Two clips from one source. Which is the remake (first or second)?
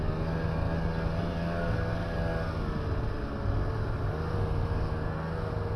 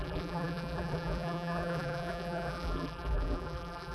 second